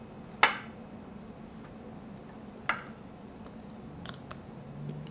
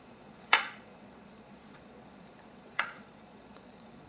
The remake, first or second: second